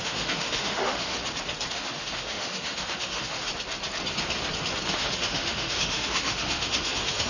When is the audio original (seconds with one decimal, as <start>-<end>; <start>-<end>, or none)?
1.2-1.7; 3.5-4.9